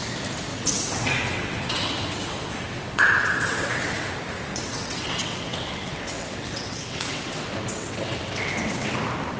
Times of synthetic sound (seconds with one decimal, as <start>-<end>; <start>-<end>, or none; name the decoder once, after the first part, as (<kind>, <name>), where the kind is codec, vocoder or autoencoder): 0.5-4.1 (vocoder, WaveNeXt); 4.5-9.0